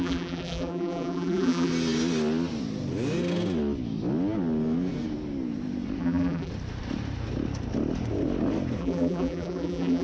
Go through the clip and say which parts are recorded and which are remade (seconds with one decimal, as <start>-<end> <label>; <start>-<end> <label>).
0.0-1.7 remade; 1.7-6.0 recorded; 6.0-6.5 remade; 6.5-8.8 recorded; 8.8-10.0 remade